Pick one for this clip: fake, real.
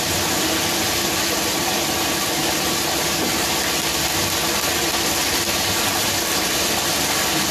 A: real